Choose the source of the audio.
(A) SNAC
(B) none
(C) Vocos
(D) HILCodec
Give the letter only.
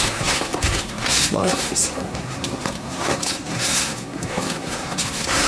A